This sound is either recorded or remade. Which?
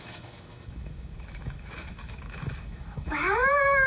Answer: remade